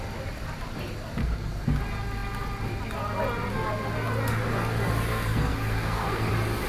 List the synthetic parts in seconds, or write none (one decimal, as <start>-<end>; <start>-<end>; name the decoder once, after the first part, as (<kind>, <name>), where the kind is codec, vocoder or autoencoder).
1.2-1.8 (codec, SNAC); 5.1-6.3